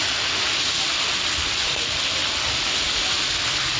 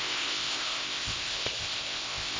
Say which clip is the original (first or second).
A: first